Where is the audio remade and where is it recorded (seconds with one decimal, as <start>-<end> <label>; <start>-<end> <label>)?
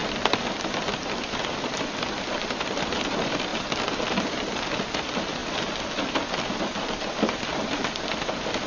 0.0-1.4 recorded; 1.4-3.5 remade; 3.5-4.3 recorded; 4.3-8.7 remade